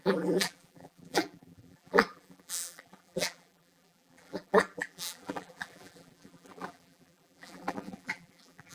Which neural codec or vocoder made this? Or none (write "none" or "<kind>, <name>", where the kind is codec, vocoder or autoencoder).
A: vocoder, BigVGAN v2